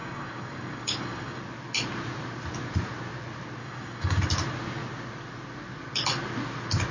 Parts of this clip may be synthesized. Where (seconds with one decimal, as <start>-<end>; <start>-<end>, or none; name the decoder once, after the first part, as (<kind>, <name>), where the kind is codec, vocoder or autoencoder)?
0.0-1.4 (codec, DAC); 3.6-4.2